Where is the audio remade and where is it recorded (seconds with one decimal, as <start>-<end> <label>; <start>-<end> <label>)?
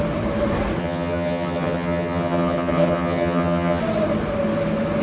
0.0-0.8 recorded; 0.8-3.8 remade; 3.8-5.0 recorded